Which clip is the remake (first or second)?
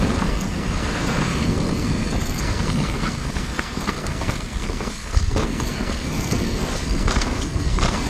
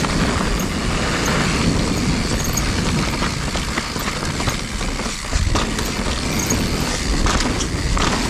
first